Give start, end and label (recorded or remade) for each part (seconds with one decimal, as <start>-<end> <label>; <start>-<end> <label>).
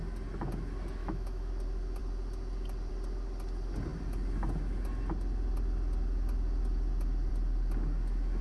0.0-1.0 recorded; 1.0-1.5 remade; 1.5-8.4 recorded